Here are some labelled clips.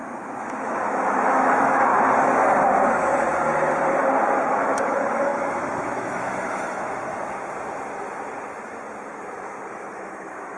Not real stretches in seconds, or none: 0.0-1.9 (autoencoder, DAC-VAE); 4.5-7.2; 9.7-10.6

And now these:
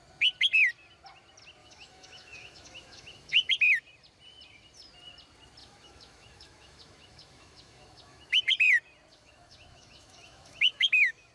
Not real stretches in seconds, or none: 1.6-3.5 (autoencoder, DAC-VAE); 5.6-8.4; 9.1-11.3

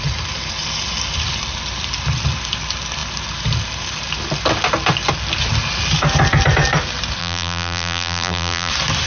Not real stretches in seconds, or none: 7.2-8.7 (vocoder, BigVGAN v2)

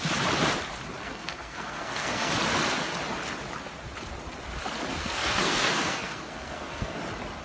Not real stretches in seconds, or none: 1.0-2.3 (codec, SNAC); 4.9-7.0

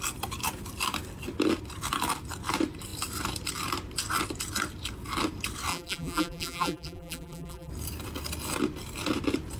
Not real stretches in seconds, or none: 5.7-7.7 (vocoder, BigVGAN v2)

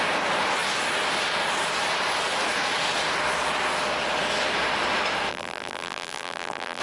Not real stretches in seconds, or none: 5.3-6.8 (vocoder, BigVGAN v2)